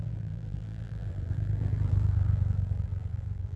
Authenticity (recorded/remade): remade